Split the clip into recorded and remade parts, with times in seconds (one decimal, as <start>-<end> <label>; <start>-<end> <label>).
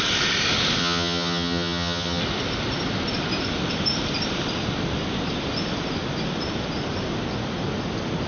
0.0-0.8 recorded; 0.8-2.2 remade; 2.2-8.3 recorded